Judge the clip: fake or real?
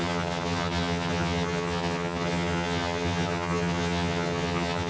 fake